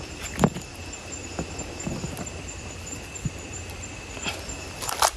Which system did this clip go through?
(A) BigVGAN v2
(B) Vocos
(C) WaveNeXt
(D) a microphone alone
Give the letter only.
D